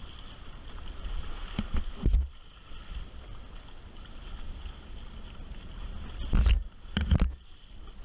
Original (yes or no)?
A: yes